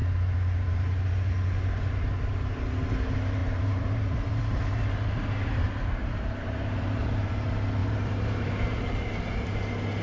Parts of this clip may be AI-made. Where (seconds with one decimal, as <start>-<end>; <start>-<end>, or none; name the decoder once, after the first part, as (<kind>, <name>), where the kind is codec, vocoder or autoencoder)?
3.4-7.3 (vocoder, BigVGAN v2); 7.8-9.1